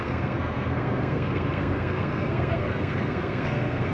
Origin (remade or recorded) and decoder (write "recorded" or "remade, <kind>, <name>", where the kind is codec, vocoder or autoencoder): remade, codec, SNAC